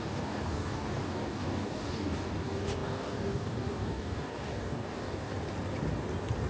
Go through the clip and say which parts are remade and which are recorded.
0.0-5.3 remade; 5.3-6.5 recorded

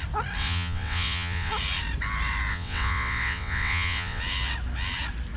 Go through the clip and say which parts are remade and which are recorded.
0.0-0.4 recorded; 0.4-1.5 remade; 1.5-2.5 recorded; 2.5-4.2 remade; 4.2-5.4 recorded